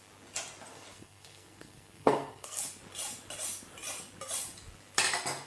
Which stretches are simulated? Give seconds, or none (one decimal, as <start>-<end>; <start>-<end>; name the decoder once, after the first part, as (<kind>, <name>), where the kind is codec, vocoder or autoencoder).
0.7-2.6 (codec, SNAC)